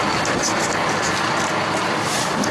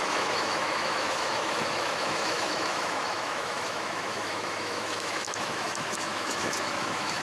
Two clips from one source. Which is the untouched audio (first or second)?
first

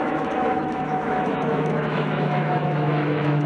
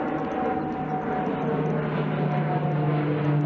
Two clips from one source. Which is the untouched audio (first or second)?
second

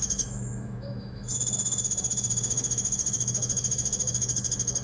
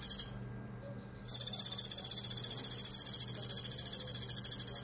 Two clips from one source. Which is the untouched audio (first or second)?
second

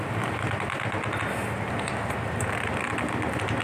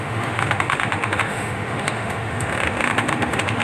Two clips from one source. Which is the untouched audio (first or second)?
first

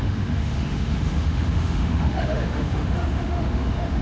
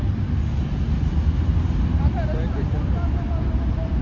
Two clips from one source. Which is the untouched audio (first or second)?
second